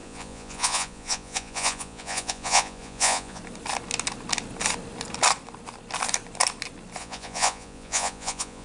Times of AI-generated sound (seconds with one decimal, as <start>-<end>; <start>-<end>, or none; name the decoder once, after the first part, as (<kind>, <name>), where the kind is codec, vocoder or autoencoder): 0.0-3.4 (vocoder, Vocos); 7.0-8.6